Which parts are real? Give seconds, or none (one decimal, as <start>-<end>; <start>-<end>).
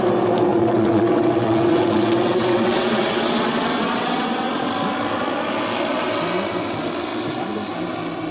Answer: 0.0-0.5; 4.7-8.3